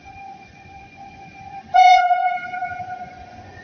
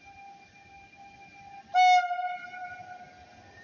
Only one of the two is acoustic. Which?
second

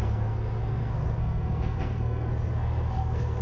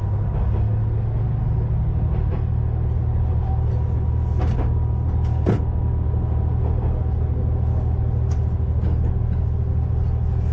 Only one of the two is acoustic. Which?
second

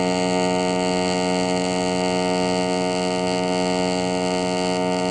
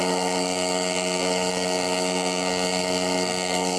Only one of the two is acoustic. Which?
first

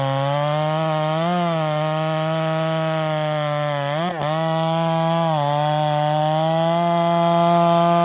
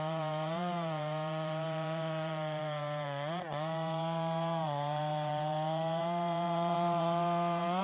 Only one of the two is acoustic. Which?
first